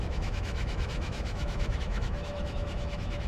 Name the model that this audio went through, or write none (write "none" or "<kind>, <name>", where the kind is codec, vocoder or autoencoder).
autoencoder, DAC-VAE